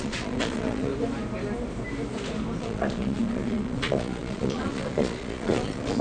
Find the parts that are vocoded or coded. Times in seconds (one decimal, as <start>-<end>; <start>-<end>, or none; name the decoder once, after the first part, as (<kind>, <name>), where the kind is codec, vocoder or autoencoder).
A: 0.0-0.9 (vocoder, Vocos); 2.6-6.0